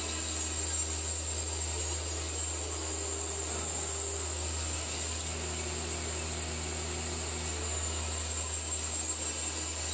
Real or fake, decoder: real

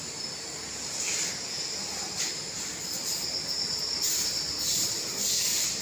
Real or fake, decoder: real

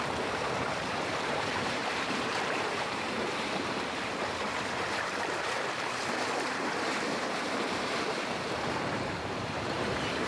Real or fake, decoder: fake, vocoder, BigVGAN v2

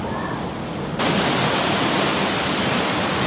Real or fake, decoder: fake, vocoder, BigVGAN v2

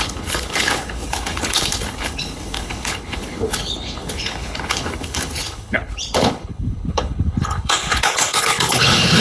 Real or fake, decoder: fake, codec, HILCodec